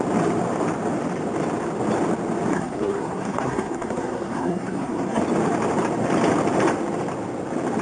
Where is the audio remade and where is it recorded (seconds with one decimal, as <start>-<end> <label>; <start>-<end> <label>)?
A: 0.0-2.5 recorded; 2.5-5.2 remade; 5.2-7.8 recorded